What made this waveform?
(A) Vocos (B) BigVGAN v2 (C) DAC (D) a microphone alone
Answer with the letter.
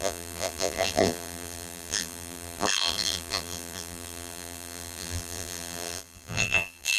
B